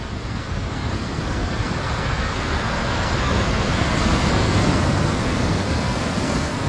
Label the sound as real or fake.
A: fake